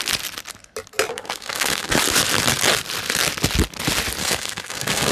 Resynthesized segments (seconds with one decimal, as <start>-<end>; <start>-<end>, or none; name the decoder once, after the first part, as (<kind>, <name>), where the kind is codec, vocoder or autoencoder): 1.1-1.9 (codec, SNAC); 4.2-5.1

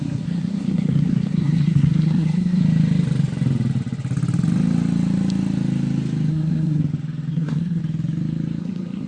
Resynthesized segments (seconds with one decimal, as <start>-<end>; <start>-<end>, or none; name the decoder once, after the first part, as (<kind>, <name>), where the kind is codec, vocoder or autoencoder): 0.0-2.6 (codec, SNAC); 6.3-6.8; 7.3-7.8; 8.6-9.1

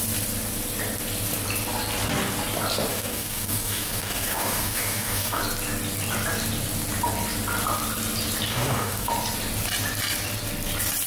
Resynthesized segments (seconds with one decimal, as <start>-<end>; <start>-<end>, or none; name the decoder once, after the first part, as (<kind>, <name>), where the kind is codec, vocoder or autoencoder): 2.9-5.4 (codec, DAC); 8.5-9.1

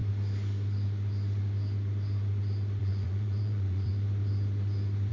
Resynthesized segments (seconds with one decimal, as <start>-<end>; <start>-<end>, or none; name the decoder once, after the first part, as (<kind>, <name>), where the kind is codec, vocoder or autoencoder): 2.8-3.9 (vocoder, Vocos)

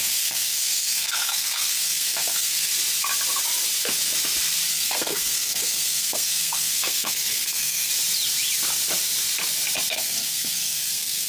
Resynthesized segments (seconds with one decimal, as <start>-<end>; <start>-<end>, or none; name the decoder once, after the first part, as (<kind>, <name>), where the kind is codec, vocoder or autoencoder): 0.0-2.7 (codec, SNAC); 4.7-7.9; 9.9-11.3

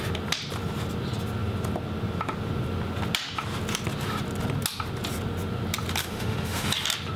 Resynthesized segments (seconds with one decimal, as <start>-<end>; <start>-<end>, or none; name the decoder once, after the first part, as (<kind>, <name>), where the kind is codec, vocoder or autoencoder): 6.0-6.7 (autoencoder, DAC-VAE)

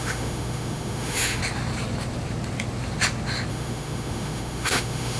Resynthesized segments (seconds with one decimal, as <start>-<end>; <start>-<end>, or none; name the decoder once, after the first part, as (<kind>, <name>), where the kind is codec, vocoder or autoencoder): 0.0-1.4 (autoencoder, DAC-VAE); 3.5-5.2

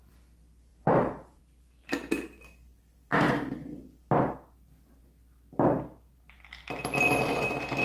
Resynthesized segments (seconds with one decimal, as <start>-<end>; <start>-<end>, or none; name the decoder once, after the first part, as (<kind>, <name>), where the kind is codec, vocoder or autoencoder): 0.7-1.4 (vocoder, BigVGAN v2); 3.1-3.8